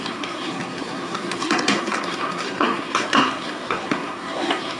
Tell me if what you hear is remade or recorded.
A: remade